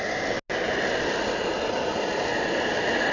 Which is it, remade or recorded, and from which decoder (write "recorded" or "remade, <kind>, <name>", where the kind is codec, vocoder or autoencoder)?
recorded